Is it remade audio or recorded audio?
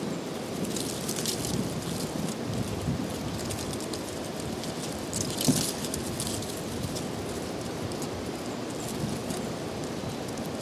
recorded